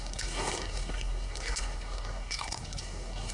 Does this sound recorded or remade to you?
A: remade